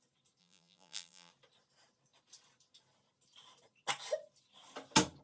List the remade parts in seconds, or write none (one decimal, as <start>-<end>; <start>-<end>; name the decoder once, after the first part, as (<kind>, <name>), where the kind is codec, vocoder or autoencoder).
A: 0.4-1.3 (vocoder, BigVGAN v2)